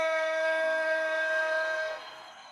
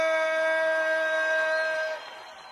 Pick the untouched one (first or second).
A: second